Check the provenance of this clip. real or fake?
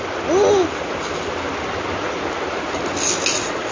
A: real